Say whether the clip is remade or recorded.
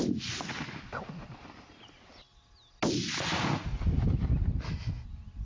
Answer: recorded